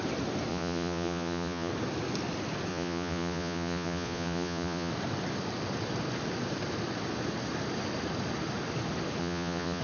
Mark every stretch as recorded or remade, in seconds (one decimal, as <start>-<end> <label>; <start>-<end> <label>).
0.0-0.5 recorded; 0.5-1.7 remade; 1.7-2.7 recorded; 2.7-4.9 remade; 4.9-9.2 recorded; 9.2-9.8 remade